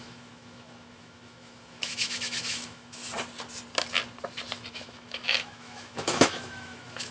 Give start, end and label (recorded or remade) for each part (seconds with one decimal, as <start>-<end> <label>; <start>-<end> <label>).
0.0-3.0 remade; 3.0-4.7 recorded; 4.7-7.1 remade